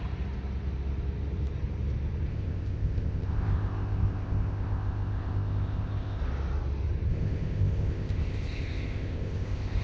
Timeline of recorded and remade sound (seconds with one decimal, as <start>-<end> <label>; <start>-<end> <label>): 0.0-2.3 recorded; 2.3-6.2 remade; 6.2-7.1 recorded; 7.1-9.8 remade